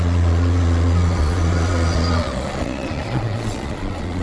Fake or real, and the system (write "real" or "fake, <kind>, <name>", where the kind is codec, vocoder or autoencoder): fake, vocoder, Vocos